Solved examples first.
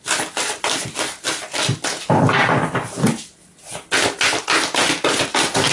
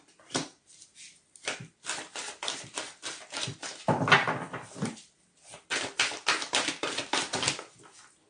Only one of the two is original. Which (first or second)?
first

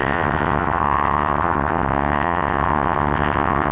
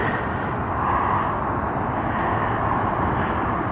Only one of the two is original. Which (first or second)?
second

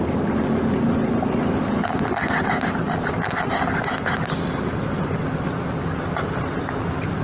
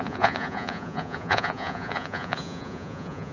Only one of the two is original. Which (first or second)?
first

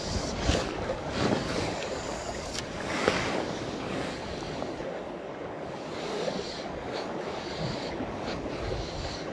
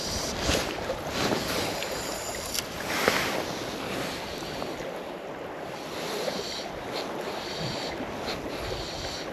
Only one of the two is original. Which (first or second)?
second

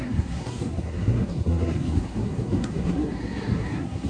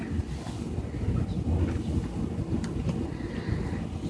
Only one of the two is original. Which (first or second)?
second